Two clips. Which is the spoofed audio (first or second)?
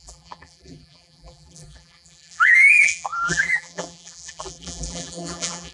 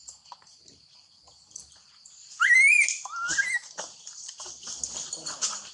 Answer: first